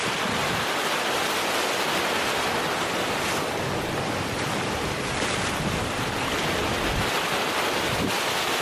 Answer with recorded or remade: recorded